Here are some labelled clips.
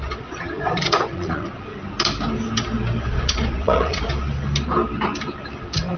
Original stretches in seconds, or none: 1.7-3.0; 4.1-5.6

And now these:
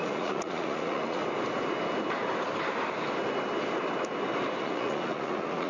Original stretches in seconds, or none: 1.2-4.6

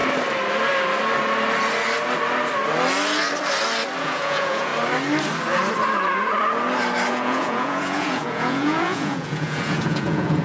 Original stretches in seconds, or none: 0.0-4.0; 4.7-7.1

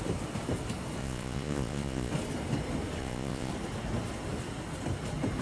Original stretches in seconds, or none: 0.0-1.0; 2.1-3.0; 3.5-5.4

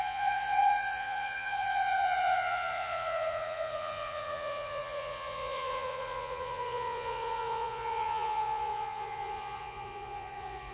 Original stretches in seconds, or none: none

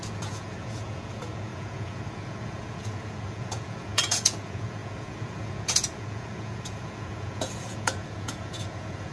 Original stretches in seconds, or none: none

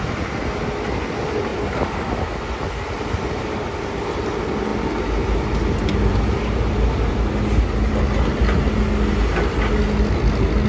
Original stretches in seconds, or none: 0.0-10.7

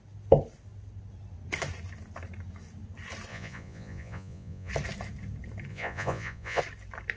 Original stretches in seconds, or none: 0.0-3.3; 4.7-5.7; 6.6-7.2